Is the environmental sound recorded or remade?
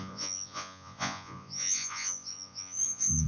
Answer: remade